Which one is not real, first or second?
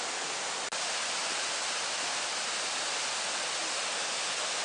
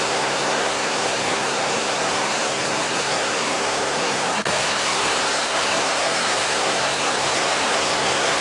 second